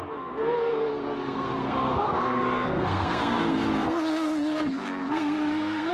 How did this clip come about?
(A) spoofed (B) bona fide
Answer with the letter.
A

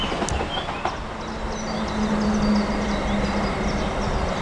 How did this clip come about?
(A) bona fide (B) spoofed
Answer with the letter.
A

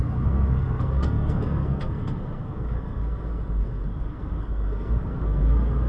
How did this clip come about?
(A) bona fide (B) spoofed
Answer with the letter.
B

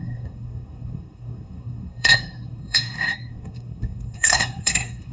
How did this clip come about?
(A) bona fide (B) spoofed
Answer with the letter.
B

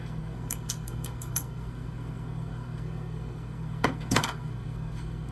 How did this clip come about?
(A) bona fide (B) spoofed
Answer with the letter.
B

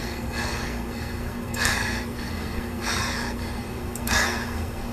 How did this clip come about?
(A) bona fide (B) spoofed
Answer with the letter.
B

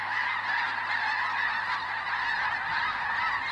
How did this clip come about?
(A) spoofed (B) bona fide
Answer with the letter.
B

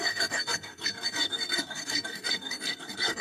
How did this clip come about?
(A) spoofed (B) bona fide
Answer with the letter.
A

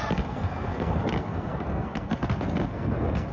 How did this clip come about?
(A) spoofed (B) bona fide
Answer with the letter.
A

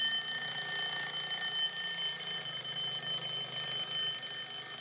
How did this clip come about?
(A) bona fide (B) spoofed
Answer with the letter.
A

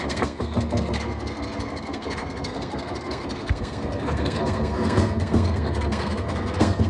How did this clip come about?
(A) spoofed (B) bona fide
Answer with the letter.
A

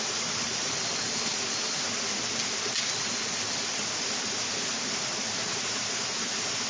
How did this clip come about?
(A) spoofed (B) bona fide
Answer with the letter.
B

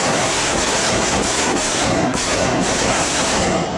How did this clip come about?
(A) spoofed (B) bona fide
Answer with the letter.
A